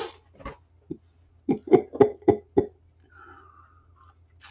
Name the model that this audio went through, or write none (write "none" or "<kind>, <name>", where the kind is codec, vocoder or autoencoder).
none